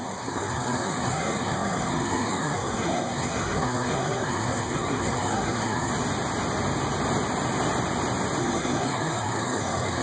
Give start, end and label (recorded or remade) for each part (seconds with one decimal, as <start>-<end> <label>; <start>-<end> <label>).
0.0-5.9 remade; 5.9-8.4 recorded; 8.4-10.0 remade